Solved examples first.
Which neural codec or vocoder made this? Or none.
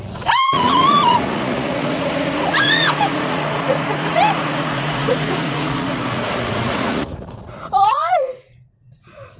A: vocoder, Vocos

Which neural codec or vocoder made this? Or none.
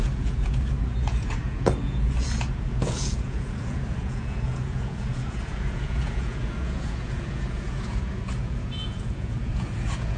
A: vocoder, Vocos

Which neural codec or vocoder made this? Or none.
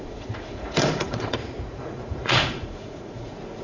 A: vocoder, Vocos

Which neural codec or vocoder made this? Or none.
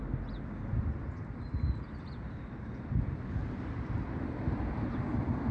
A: none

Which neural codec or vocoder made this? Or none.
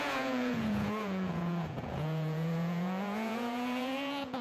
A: vocoder, Vocos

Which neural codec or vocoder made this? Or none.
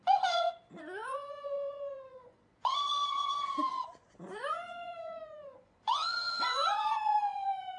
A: vocoder, Vocos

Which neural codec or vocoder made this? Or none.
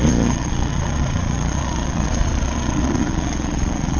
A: vocoder, Vocos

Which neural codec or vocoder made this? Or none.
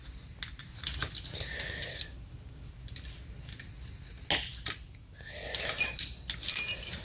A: none